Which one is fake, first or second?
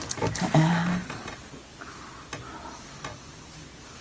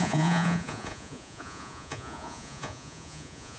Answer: second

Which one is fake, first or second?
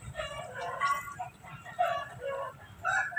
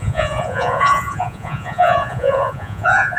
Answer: second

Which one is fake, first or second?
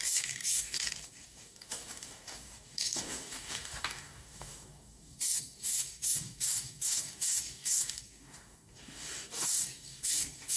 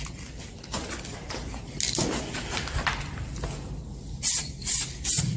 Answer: first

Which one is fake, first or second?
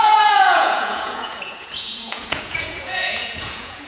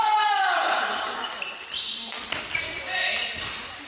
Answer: first